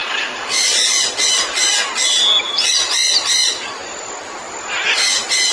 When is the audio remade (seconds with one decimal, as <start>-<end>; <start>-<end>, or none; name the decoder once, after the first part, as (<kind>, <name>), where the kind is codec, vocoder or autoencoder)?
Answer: 0.0-5.5 (vocoder, BigVGAN v2)